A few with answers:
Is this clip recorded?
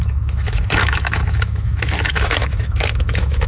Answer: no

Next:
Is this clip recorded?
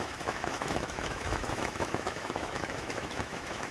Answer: no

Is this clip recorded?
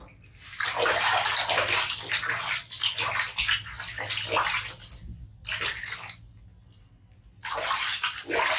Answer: yes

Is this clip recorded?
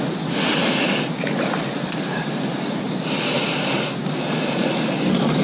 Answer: yes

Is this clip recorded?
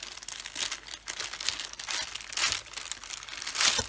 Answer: yes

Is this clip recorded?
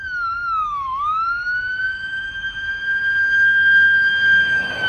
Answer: no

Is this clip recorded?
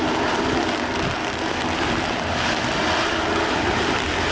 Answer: yes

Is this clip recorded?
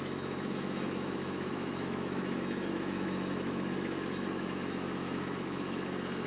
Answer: no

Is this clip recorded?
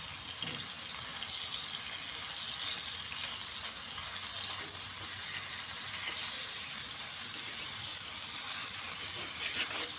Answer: yes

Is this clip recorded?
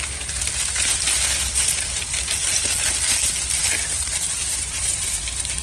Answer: yes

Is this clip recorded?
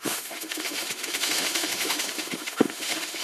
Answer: no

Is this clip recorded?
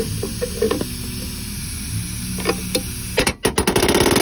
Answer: yes